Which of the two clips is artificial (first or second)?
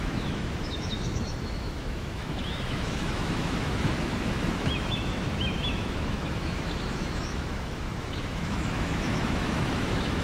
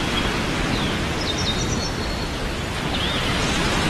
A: first